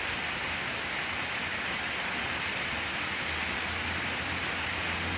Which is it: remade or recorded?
recorded